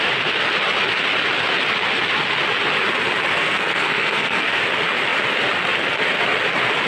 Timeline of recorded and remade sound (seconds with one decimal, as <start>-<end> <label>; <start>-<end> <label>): 0.0-3.3 recorded; 3.3-4.6 remade; 4.6-6.9 recorded